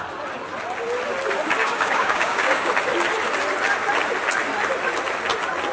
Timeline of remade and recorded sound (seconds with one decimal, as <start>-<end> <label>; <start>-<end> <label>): 0.0-1.6 recorded; 1.6-2.7 remade; 2.7-5.7 recorded